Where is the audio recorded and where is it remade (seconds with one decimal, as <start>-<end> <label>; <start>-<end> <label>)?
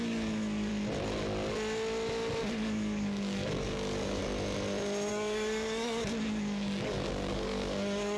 0.0-0.7 remade; 0.7-2.4 recorded; 2.4-4.2 remade; 4.2-5.1 recorded; 5.1-8.2 remade